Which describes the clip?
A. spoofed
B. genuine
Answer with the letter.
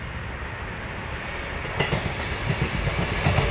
B